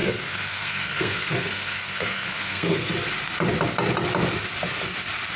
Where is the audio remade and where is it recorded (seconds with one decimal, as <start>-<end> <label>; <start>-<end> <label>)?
0.0-2.9 remade; 2.9-5.4 recorded

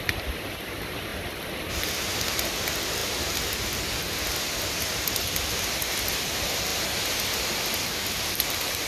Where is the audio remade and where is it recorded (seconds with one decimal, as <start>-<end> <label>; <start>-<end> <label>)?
0.0-8.9 recorded

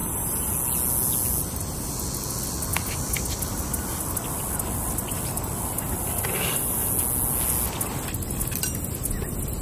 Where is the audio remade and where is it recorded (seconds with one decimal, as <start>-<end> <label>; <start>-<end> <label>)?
0.0-0.5 remade; 0.5-2.7 recorded; 2.7-6.9 remade; 6.9-9.6 recorded

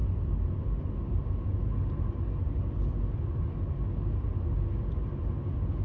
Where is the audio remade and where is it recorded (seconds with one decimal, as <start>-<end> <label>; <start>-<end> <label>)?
0.0-5.8 recorded

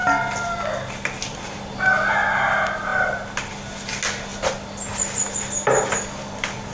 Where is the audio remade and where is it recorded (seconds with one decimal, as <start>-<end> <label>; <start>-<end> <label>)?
0.0-6.7 recorded